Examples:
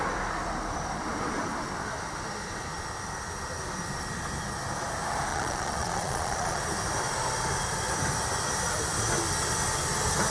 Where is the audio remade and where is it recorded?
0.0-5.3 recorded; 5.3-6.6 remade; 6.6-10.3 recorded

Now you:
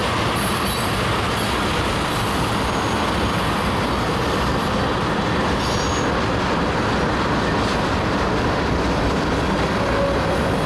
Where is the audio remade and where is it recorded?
0.0-10.7 recorded